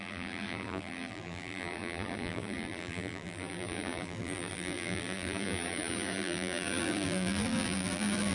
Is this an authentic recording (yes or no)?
no